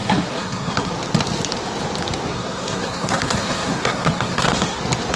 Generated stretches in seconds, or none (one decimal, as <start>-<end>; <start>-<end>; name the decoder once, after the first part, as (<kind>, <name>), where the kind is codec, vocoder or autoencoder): 0.0-0.9 (codec, SNAC); 2.3-4.8